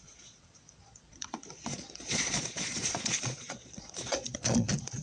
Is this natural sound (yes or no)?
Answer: no